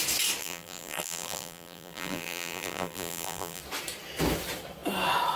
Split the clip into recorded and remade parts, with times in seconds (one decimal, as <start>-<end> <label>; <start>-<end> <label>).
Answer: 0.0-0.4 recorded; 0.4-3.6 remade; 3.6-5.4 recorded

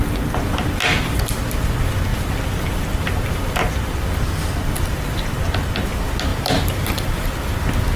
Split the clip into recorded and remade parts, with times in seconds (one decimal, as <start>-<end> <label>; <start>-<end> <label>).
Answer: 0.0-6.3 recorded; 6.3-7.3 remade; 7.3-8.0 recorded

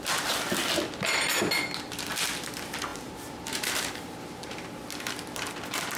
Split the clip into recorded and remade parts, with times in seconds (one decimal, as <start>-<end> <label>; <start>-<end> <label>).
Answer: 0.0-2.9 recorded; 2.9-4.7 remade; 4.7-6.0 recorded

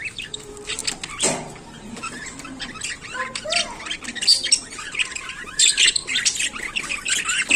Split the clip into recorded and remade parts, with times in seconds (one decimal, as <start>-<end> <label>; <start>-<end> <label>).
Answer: 0.0-7.6 recorded

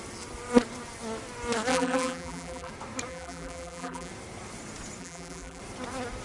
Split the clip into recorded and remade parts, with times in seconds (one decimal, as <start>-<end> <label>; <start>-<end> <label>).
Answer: 0.0-1.7 recorded; 1.7-2.7 remade; 2.7-3.1 recorded; 3.1-4.1 remade; 4.1-5.0 recorded; 5.0-5.6 remade; 5.6-6.2 recorded

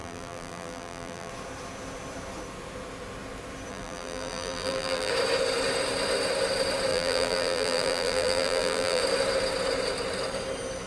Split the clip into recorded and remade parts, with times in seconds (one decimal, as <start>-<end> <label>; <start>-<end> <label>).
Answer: 0.0-1.3 remade; 1.3-3.7 recorded; 3.7-5.1 remade; 5.1-6.9 recorded; 6.9-9.0 remade; 9.0-10.9 recorded

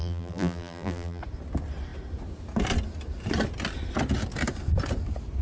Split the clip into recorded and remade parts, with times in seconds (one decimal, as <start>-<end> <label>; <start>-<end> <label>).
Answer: 0.0-1.2 remade; 1.2-5.4 recorded

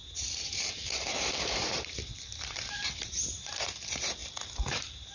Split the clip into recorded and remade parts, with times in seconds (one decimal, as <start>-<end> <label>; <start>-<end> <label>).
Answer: 0.0-5.1 remade